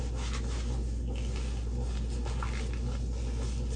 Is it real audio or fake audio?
real